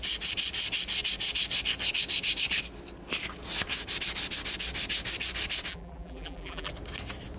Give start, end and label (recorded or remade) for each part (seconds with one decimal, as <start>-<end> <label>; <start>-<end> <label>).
0.0-5.7 recorded; 5.7-6.7 remade; 6.7-7.4 recorded